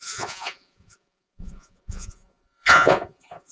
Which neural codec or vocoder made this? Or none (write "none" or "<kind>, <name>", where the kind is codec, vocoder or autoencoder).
vocoder, Vocos